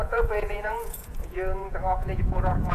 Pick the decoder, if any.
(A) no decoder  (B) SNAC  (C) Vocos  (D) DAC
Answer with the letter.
C